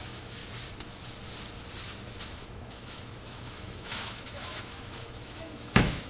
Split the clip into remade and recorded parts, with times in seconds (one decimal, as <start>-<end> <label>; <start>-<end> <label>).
0.0-0.4 remade; 0.4-2.2 recorded; 2.2-6.1 remade